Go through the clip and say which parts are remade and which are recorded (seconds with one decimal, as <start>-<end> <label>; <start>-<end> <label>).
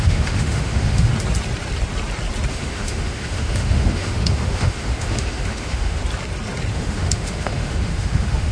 0.0-1.1 remade; 1.1-2.5 recorded; 2.5-6.0 remade; 6.0-6.7 recorded; 6.7-8.5 remade